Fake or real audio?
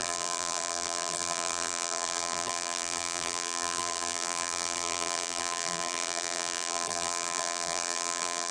fake